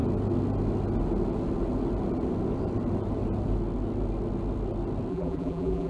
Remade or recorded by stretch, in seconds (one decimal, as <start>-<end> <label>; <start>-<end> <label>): 0.0-5.1 recorded; 5.1-5.9 remade